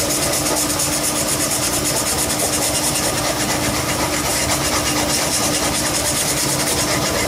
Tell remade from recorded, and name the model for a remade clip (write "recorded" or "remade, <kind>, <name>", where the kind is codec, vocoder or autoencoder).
recorded